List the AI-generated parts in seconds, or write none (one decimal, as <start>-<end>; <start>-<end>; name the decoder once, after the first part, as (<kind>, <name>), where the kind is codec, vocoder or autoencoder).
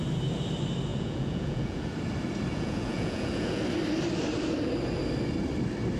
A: 0.9-1.9 (vocoder, Vocos); 2.5-3.6